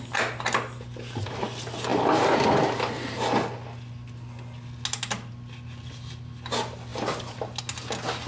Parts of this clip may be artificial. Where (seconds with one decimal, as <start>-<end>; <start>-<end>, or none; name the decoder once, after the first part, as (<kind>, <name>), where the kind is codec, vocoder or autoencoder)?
none